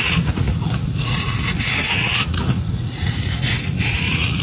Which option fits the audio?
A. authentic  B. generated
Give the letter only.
B